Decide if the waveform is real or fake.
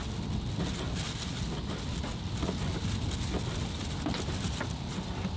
real